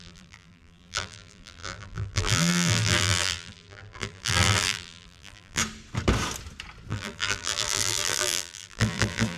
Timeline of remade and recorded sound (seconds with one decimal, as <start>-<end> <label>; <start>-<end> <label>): 0.0-5.6 remade; 5.6-6.9 recorded; 6.9-9.4 remade

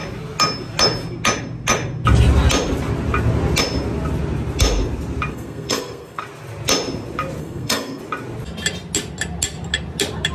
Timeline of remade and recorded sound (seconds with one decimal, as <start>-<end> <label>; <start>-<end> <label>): 0.0-5.3 recorded; 5.3-6.2 remade; 6.2-7.4 recorded; 7.4-8.0 remade; 8.0-10.3 recorded

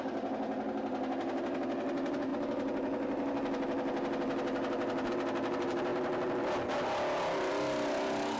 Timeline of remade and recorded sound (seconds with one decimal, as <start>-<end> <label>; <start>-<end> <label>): 0.0-8.4 recorded